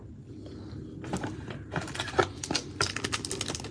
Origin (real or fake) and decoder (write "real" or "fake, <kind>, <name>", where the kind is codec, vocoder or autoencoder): real